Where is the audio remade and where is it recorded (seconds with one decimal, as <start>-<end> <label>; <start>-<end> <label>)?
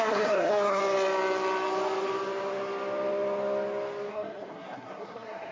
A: 0.0-0.8 remade; 0.8-4.1 recorded; 4.1-5.5 remade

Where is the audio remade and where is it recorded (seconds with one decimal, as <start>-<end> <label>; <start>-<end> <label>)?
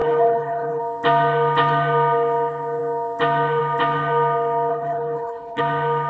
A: 0.0-0.8 remade; 0.8-4.7 recorded; 4.7-5.6 remade; 5.6-6.1 recorded